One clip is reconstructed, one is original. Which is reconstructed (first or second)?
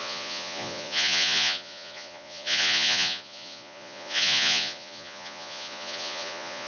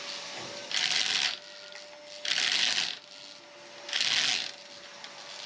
first